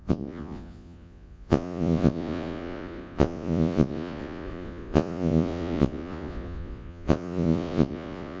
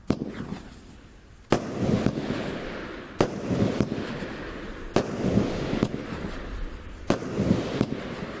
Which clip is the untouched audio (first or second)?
second